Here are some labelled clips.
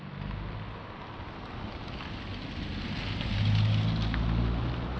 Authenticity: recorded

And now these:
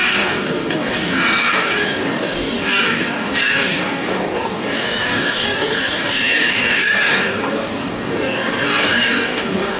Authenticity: remade